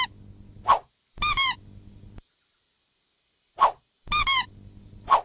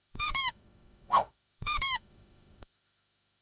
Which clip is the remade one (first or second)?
second